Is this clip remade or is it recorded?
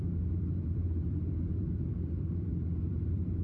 remade